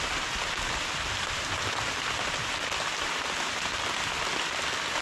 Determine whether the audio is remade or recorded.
recorded